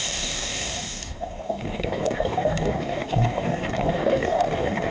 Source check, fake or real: fake